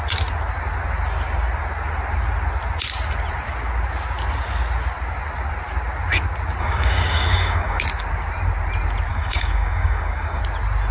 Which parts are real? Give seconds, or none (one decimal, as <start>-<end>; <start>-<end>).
0.0-6.6; 7.8-9.1; 10.4-10.9